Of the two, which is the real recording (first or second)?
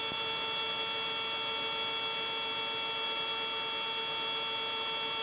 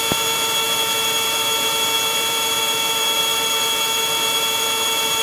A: first